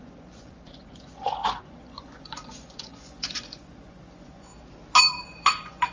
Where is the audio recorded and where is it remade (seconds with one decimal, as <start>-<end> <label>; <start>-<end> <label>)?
0.0-4.5 remade; 4.5-5.0 recorded; 5.0-5.9 remade